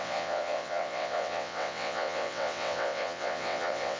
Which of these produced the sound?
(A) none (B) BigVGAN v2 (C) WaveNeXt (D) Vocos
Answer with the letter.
C